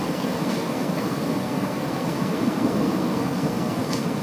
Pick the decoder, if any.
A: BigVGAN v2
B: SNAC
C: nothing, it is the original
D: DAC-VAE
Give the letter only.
B